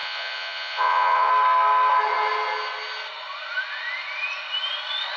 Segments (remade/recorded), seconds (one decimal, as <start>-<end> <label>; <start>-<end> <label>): 0.0-1.3 remade; 1.3-5.2 recorded